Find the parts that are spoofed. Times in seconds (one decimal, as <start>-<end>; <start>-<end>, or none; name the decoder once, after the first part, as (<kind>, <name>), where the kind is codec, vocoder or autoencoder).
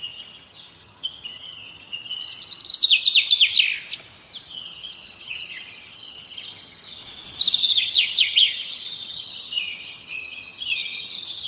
0.0-2.6 (vocoder, HiFi-GAN); 4.5-7.0; 7.6-11.5